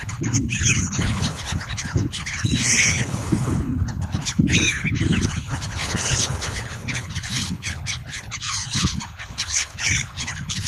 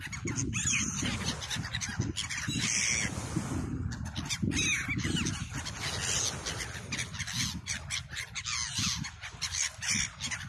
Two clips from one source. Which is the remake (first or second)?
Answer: first